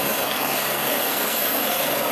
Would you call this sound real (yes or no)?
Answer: no